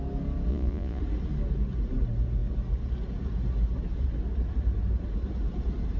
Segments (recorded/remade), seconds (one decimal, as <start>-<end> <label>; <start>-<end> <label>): 0.0-0.5 recorded; 0.5-1.0 remade; 1.0-6.0 recorded